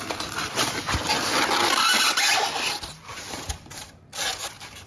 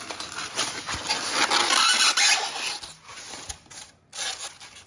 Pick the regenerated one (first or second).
first